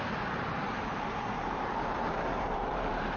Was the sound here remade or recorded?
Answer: remade